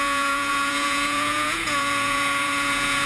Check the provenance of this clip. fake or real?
fake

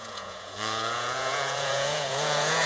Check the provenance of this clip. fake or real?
fake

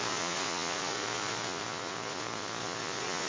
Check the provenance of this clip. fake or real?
fake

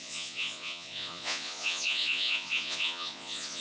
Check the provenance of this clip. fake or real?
fake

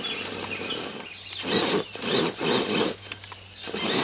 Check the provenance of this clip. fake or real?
real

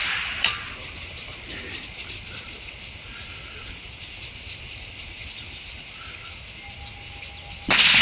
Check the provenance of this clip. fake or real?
real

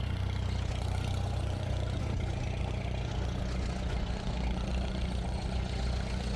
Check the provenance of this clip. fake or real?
fake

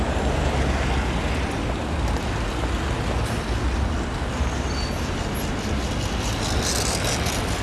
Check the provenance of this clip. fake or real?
real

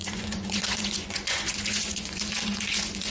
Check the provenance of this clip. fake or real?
fake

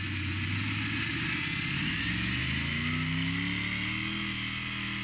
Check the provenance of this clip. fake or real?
real